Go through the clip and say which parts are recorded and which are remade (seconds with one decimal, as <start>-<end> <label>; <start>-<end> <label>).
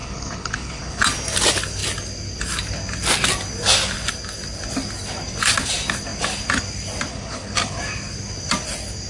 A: 0.0-1.0 remade; 1.0-7.1 recorded; 7.1-7.8 remade; 7.8-9.1 recorded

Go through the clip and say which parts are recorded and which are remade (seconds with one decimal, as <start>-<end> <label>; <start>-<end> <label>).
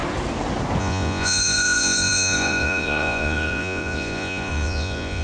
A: 0.0-0.8 recorded; 0.8-5.2 remade